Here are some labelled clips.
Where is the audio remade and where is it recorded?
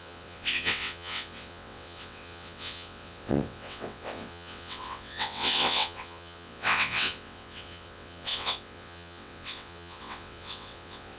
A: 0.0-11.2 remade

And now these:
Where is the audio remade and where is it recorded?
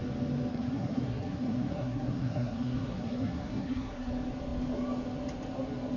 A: 0.0-0.5 recorded; 0.5-4.1 remade; 4.1-6.0 recorded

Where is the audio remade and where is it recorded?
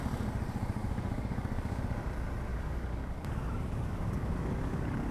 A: 0.0-0.8 recorded; 0.8-1.8 remade; 1.8-2.5 recorded; 2.5-5.1 remade